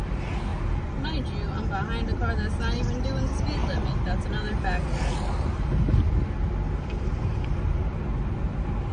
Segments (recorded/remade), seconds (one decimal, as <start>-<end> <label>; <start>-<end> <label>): 0.0-8.9 recorded